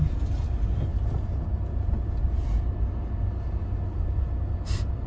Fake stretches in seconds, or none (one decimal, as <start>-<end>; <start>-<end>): none